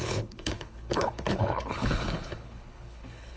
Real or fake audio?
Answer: fake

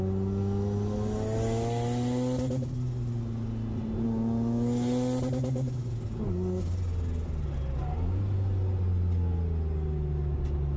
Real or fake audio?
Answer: real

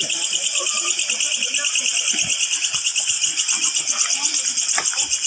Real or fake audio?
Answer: real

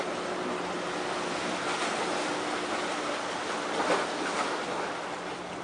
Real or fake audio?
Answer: real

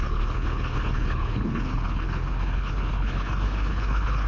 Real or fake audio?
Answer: fake